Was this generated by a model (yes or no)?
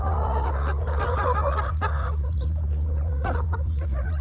yes